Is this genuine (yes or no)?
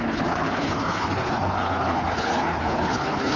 no